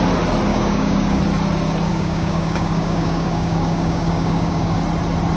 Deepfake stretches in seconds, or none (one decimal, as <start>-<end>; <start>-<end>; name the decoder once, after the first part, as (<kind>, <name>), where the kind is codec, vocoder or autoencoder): 0.5-1.2 (codec, DAC); 1.9-4.8